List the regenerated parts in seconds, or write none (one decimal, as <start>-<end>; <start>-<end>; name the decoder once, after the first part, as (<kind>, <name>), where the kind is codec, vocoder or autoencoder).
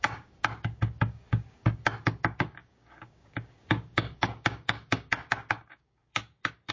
0.0-6.7 (codec, DAC)